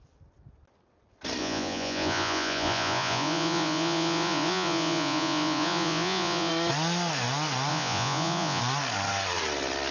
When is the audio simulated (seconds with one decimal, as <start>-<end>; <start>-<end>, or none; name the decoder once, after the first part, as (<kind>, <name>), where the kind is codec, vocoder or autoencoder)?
1.4-6.5 (vocoder, Vocos); 7.7-8.6